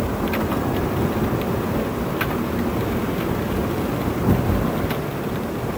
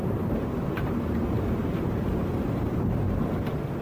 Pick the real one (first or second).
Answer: first